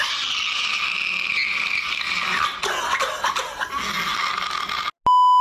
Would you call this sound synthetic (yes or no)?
no